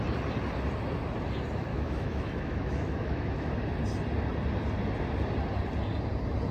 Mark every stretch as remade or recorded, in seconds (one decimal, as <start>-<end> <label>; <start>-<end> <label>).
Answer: 0.0-1.7 recorded; 1.7-3.5 remade; 3.5-6.5 recorded